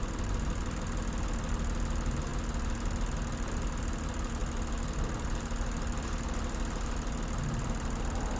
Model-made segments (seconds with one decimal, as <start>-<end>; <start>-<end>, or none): none